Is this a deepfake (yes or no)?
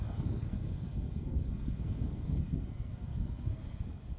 yes